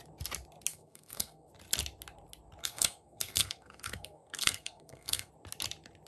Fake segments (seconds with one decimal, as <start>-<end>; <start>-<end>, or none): 0.7-1.5; 2.6-5.3